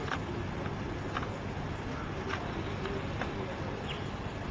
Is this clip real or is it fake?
real